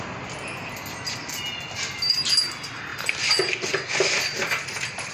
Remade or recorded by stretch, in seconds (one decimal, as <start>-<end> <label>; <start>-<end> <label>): 0.0-2.9 recorded; 2.9-5.1 remade